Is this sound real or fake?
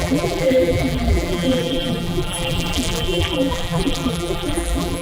fake